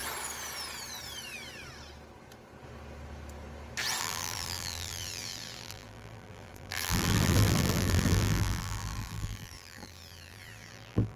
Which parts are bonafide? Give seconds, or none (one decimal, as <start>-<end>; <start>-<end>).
0.0-4.0